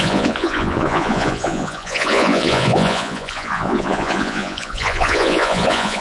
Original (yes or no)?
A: no